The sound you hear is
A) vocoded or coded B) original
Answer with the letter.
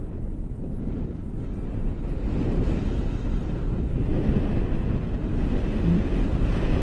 B